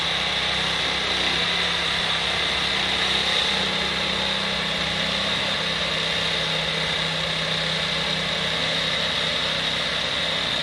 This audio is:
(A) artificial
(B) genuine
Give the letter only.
B